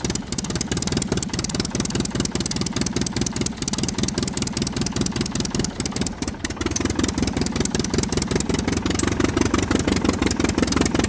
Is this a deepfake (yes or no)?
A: no